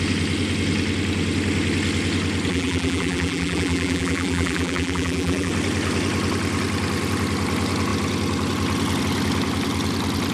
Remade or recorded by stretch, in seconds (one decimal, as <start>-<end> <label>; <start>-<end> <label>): 0.0-2.5 recorded; 2.5-5.5 remade; 5.5-10.3 recorded